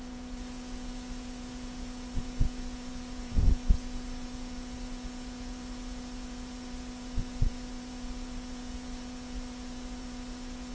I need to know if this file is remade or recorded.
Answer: remade